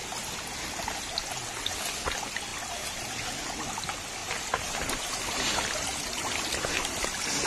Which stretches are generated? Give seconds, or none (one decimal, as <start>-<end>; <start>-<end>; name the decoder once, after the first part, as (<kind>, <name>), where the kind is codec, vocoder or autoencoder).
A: none

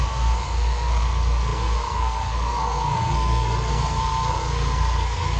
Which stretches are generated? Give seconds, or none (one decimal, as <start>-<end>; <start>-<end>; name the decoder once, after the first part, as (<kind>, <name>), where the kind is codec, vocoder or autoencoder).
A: 0.0-5.4 (codec, SNAC)

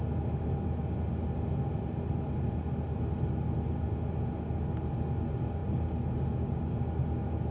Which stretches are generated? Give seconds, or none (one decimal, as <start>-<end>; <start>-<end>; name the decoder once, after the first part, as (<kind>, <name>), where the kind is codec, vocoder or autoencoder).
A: none

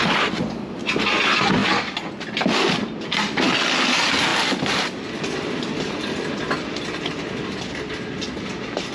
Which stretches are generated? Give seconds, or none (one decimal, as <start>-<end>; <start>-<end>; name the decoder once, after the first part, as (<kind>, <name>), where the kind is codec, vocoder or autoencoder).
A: none

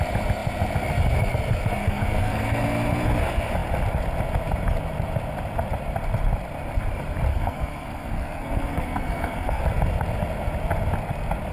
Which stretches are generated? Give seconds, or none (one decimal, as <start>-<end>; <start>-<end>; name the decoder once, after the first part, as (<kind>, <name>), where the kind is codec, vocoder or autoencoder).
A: 1.8-2.6 (codec, SNAC); 7.3-9.6